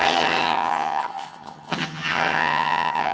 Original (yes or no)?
no